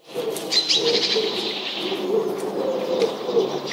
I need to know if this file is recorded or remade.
remade